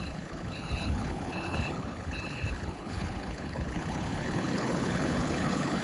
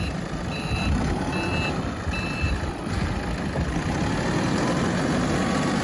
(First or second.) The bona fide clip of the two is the second